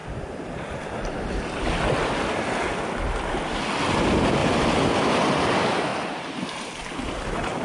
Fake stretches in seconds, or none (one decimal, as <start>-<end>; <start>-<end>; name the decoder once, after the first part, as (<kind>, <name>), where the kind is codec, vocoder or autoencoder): 5.9-6.9 (vocoder, BigVGAN v2)

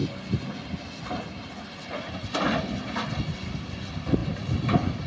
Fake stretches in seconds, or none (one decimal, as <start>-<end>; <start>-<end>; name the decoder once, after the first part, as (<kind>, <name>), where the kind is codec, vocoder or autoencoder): none

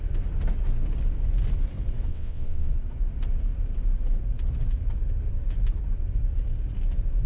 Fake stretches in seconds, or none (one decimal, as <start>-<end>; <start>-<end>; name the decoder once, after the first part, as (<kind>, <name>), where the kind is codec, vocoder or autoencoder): 2.1-2.7 (vocoder, WaveNeXt)

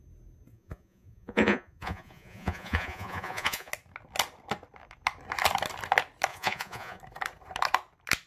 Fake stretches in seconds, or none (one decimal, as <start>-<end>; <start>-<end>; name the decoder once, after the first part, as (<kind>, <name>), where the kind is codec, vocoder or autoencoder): 0.5-3.7 (vocoder, Vocos); 6.3-7.0

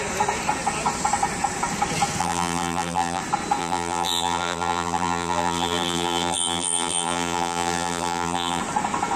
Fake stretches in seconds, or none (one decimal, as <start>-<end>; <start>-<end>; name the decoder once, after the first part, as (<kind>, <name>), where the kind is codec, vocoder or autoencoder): 2.2-3.2 (vocoder, BigVGAN v2); 3.6-8.6

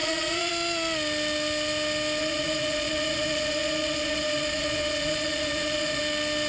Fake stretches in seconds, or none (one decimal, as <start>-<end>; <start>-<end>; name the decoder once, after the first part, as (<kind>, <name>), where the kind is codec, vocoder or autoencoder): 0.0-0.5 (vocoder, Vocos); 2.2-6.0